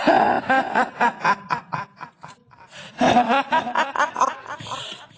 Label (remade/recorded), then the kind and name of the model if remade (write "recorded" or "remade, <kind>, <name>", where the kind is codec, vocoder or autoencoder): recorded